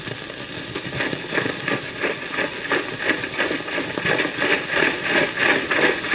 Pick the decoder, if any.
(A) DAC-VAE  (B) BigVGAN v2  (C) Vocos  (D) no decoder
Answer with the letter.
D